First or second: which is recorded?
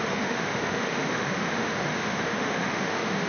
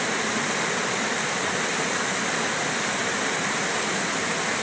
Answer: second